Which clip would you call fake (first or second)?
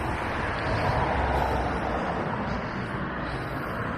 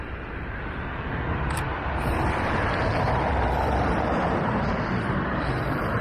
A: second